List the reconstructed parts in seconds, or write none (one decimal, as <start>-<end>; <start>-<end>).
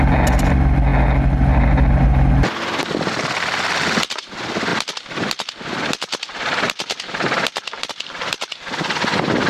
none